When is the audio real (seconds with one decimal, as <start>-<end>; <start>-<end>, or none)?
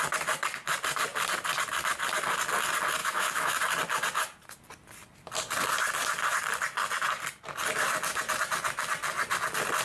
0.0-3.0; 3.6-9.8